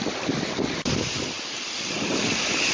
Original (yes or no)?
yes